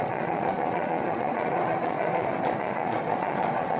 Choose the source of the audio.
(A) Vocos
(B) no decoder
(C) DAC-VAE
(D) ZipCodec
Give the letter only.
A